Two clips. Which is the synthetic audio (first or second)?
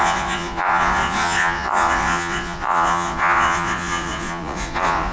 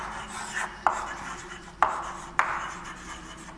first